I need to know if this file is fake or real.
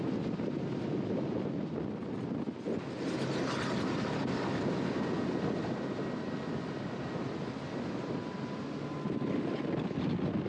real